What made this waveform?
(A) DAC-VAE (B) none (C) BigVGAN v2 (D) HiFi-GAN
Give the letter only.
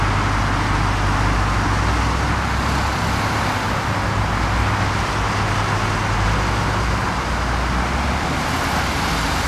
B